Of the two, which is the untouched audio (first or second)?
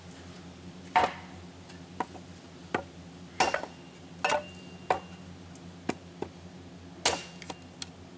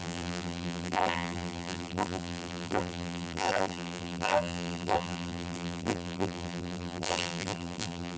first